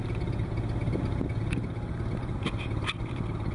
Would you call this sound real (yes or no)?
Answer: yes